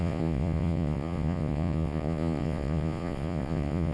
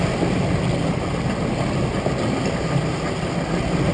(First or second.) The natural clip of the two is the second